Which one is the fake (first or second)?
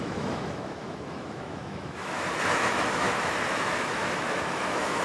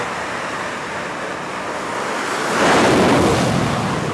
first